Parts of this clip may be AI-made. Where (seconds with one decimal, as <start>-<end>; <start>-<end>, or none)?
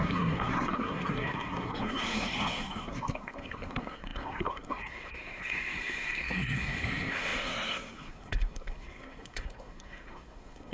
0.0-10.7